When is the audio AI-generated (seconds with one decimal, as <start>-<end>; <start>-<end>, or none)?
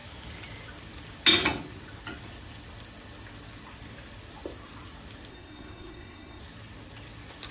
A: 5.3-6.4